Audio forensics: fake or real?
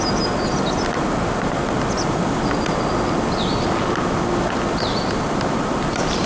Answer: real